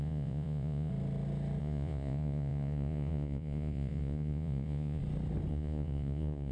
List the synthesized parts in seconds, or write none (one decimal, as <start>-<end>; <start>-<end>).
0.0-0.9; 1.6-5.0; 5.5-6.5